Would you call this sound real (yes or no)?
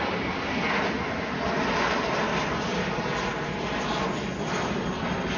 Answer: yes